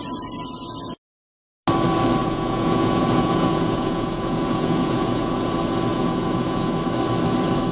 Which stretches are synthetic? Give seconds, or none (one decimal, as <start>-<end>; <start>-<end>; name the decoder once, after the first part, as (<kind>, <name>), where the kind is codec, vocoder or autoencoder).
2.2-5.5 (vocoder, Vocos); 5.9-6.8

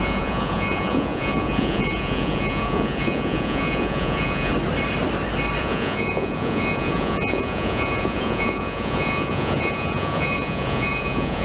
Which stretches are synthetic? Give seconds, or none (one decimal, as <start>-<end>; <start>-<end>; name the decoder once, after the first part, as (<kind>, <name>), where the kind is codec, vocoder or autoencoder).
0.0-4.5 (vocoder, Vocos); 5.6-11.4

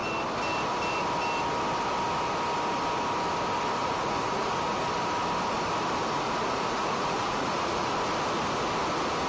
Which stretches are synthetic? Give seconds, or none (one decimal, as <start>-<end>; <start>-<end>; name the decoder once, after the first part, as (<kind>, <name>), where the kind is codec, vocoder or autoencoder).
3.8-4.8 (vocoder, Vocos); 6.0-7.9

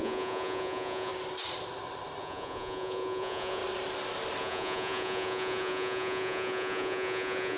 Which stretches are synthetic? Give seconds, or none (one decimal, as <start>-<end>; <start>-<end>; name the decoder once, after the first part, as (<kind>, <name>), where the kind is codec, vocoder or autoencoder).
0.0-1.1 (vocoder, Vocos); 2.2-3.6; 4.4-7.6

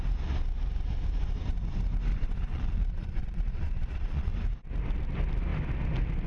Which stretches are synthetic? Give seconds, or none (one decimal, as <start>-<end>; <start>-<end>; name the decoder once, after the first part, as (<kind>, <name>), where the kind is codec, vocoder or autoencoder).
2.1-4.3 (vocoder, Vocos)